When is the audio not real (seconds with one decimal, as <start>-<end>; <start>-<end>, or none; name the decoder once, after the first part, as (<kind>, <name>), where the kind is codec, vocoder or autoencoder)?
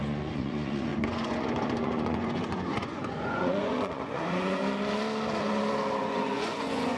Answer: 0.0-4.6 (vocoder, Vocos); 6.0-7.0